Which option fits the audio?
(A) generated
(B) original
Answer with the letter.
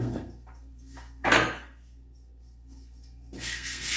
A